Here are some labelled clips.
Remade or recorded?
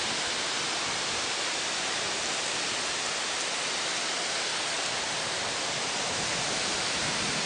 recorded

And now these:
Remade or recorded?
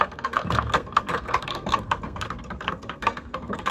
remade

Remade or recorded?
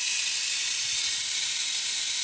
recorded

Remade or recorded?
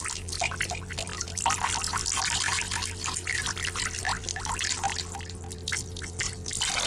recorded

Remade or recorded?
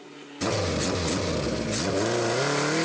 recorded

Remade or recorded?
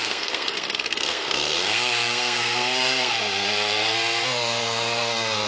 remade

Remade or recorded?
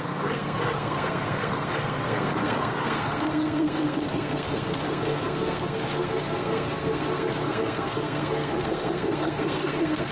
remade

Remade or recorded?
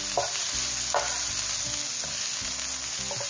recorded